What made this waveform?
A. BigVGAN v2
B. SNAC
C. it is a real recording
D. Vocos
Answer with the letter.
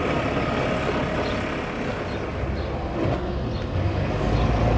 C